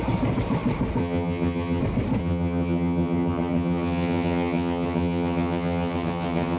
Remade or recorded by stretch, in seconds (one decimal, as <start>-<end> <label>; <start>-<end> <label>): 0.0-1.0 recorded; 1.0-1.8 remade; 1.8-2.2 recorded; 2.2-6.6 remade